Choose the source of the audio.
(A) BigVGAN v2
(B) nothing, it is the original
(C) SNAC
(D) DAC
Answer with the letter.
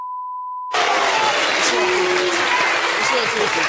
B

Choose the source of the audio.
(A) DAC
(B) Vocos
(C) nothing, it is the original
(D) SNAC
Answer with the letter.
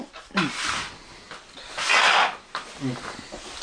C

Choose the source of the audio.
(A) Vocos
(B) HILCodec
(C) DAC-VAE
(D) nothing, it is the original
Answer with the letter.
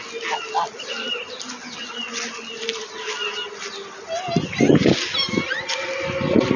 D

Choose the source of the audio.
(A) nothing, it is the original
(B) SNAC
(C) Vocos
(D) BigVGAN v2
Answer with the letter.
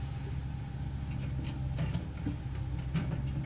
A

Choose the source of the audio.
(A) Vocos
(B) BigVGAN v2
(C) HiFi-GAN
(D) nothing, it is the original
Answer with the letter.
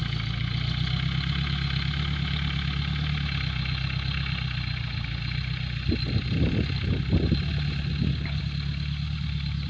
D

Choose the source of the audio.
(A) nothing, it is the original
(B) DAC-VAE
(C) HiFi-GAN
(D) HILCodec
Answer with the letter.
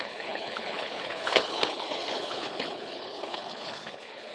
D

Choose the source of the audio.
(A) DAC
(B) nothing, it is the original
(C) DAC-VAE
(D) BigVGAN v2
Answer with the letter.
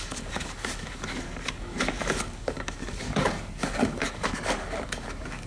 A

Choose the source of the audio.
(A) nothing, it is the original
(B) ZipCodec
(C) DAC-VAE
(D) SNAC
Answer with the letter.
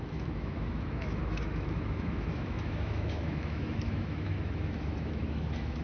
C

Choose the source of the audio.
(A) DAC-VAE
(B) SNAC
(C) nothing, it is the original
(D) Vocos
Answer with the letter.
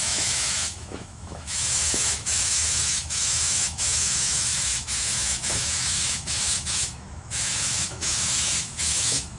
A